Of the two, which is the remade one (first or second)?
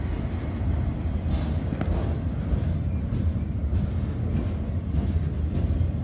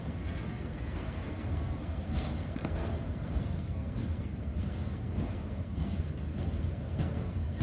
second